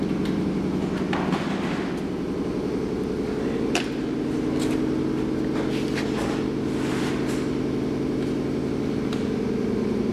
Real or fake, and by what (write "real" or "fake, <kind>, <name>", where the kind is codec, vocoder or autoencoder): real